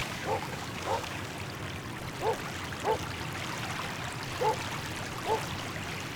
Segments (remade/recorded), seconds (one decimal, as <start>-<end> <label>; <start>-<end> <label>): 0.0-1.3 remade; 1.3-6.2 recorded